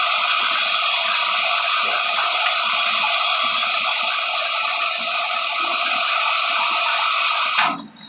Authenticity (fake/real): real